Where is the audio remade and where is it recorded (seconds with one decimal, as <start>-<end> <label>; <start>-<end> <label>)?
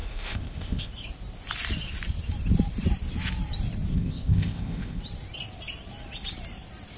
0.0-0.9 remade; 0.9-3.9 recorded; 3.9-5.0 remade; 5.0-7.0 recorded